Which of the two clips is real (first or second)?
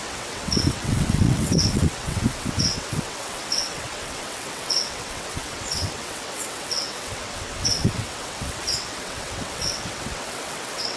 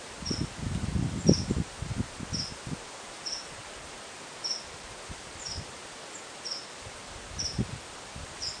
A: second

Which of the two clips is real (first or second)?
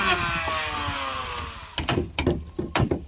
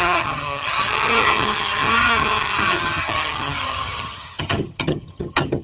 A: first